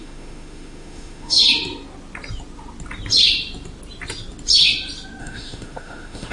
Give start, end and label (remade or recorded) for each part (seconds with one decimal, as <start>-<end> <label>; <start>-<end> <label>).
0.0-1.4 remade; 1.4-5.2 recorded; 5.2-6.3 remade